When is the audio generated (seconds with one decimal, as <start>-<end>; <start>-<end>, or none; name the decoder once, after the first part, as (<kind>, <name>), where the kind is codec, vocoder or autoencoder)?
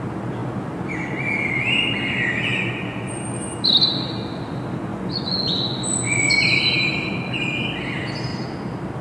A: 2.5-3.1 (vocoder, Vocos); 4.9-6.6